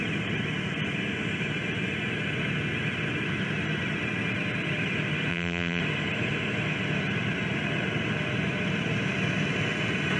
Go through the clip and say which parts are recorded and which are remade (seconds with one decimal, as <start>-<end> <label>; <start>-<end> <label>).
0.0-5.3 recorded; 5.3-5.8 remade; 5.8-10.2 recorded